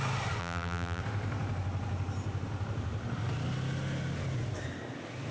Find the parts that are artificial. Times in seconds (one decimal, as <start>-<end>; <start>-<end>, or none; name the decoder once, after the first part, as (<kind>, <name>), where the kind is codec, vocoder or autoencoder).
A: 0.4-1.0 (vocoder, BigVGAN v2)